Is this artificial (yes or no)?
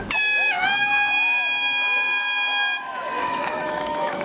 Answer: yes